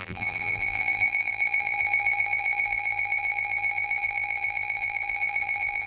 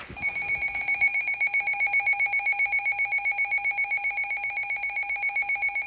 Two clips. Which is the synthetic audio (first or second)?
first